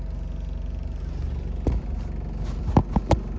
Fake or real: real